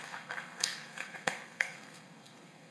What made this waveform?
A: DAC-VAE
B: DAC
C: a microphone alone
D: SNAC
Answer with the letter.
D